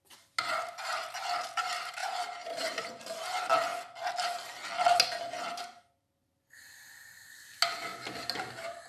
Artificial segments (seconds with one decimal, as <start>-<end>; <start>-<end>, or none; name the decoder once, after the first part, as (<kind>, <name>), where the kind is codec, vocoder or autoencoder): 2.0-3.0 (vocoder, BigVGAN v2)